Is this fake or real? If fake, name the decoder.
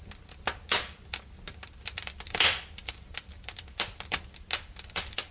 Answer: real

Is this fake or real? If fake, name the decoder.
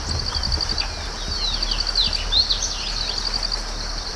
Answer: real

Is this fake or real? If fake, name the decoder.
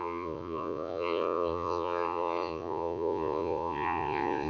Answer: fake, vocoder, Vocos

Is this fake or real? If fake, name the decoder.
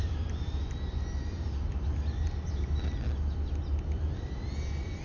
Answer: real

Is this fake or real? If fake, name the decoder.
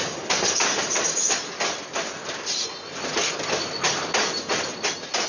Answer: real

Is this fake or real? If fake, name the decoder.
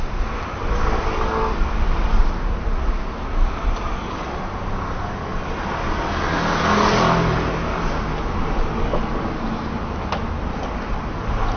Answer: real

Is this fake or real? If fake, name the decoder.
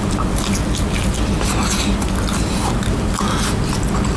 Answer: real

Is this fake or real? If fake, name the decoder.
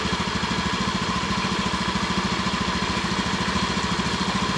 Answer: real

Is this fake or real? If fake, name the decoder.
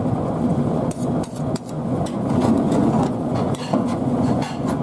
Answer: fake, vocoder, Vocos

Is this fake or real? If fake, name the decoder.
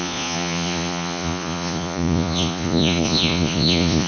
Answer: fake, vocoder, Vocos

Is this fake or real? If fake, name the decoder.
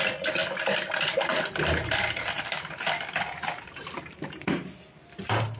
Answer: real